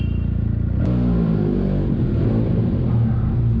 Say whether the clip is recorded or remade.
recorded